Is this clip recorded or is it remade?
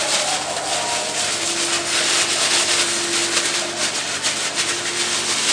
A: recorded